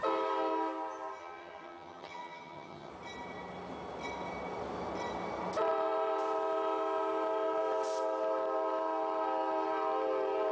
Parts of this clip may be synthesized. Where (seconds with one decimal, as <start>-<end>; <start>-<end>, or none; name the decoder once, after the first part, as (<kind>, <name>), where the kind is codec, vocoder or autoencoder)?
1.2-2.9 (vocoder, HiFi-GAN)